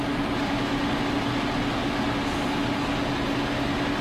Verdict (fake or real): real